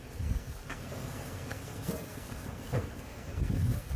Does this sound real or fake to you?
fake